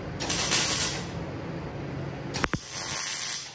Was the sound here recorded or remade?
recorded